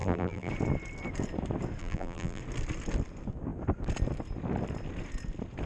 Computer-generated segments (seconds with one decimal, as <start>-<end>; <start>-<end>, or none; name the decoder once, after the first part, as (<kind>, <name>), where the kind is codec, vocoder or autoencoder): 0.0-0.5 (vocoder, BigVGAN v2); 1.8-2.4